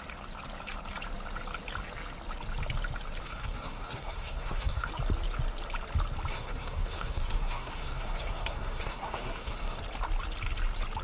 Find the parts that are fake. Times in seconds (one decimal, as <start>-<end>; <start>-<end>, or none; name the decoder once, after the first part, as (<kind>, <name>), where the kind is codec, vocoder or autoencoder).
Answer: 3.2-4.9 (codec, SNAC); 6.3-9.8